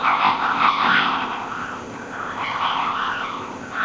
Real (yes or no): no